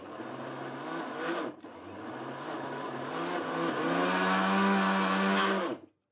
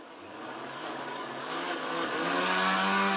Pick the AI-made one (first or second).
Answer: second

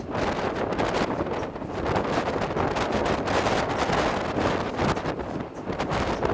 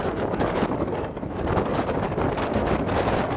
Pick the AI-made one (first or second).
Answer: second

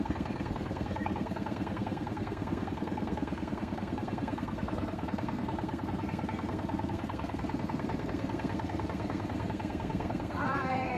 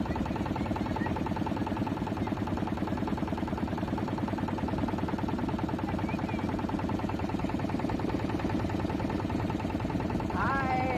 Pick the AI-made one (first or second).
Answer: first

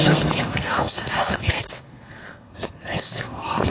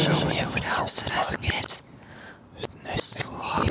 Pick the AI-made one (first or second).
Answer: first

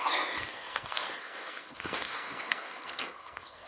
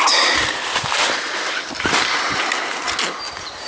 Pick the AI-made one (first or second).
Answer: first